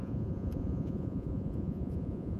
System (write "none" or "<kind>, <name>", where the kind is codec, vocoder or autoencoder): vocoder, Vocos